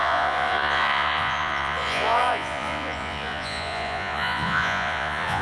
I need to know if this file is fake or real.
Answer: fake